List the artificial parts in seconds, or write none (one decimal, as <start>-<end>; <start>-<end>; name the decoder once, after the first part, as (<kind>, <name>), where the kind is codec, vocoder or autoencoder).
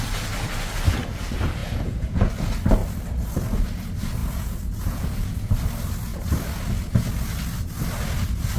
1.6-2.3 (vocoder, Vocos); 4.2-5.5